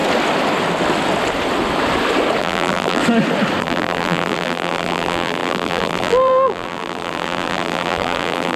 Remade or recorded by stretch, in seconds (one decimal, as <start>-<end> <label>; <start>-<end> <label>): 0.0-2.4 recorded; 2.4-3.0 remade; 3.0-3.6 recorded; 3.6-8.6 remade